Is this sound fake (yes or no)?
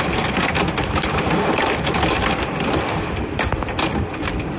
no